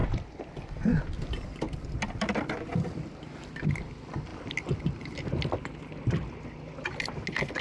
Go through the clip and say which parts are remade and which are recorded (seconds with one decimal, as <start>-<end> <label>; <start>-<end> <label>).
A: 0.0-7.6 recorded